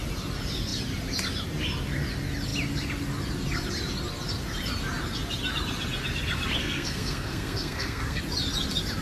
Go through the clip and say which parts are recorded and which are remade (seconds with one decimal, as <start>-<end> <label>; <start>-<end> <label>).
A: 0.0-6.6 recorded; 6.6-8.2 remade; 8.2-9.0 recorded